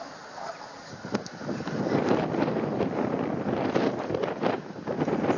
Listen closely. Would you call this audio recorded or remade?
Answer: recorded